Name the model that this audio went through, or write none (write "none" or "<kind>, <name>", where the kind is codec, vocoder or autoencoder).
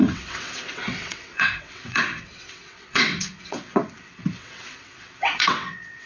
vocoder, WaveNeXt